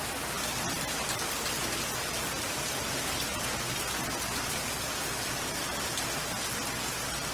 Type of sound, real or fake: real